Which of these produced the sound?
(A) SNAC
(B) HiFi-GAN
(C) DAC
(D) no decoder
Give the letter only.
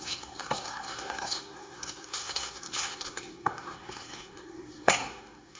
A